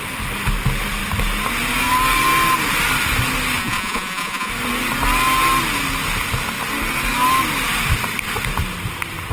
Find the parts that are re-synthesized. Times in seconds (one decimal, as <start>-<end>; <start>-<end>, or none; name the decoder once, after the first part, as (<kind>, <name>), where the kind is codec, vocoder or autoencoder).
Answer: 3.6-4.5 (vocoder, Vocos)